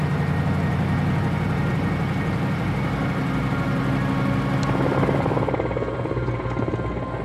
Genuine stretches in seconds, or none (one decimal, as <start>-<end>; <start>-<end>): 0.0-7.2